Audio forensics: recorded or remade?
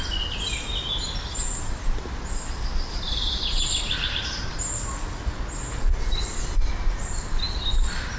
recorded